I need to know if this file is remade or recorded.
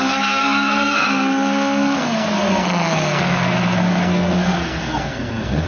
remade